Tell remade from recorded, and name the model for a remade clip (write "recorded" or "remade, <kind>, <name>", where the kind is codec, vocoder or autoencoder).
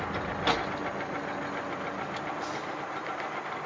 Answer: recorded